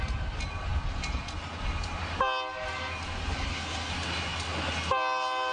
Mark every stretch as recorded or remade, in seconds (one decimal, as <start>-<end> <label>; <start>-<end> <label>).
0.0-3.3 recorded; 3.3-3.9 remade; 3.9-5.5 recorded